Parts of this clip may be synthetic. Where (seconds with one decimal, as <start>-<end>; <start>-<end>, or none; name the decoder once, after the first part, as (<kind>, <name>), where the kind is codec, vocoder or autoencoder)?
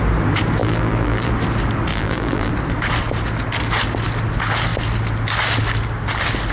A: 0.6-1.3 (vocoder, BigVGAN v2); 1.9-2.5